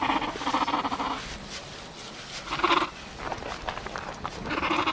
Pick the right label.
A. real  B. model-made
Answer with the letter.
A